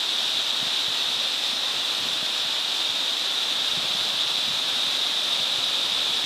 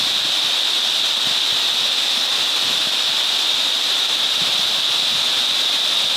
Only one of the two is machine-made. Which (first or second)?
first